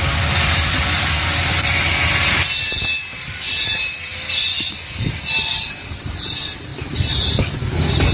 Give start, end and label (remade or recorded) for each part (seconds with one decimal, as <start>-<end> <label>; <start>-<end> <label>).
0.0-8.1 recorded